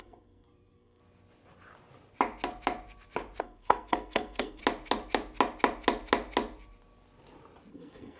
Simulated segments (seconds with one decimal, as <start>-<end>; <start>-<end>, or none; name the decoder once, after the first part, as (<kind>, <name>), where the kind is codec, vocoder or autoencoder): 0.0-1.0 (codec, SNAC); 3.4-4.6; 7.7-8.2